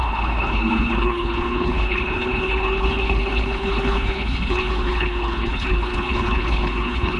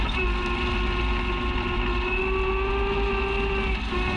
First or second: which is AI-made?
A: first